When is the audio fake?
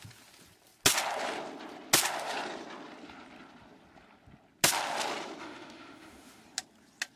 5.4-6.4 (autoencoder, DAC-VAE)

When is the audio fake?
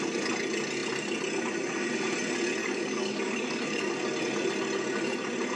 2.6-3.9 (codec, DAC)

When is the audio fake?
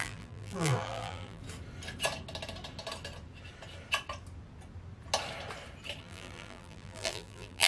0.0-1.4 (vocoder, BigVGAN v2); 6.0-7.7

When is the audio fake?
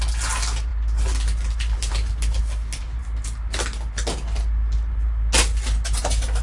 none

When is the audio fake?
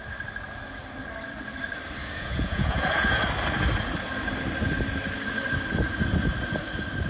2.0-3.2 (vocoder, Vocos)